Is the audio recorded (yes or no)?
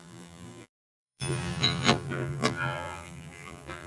no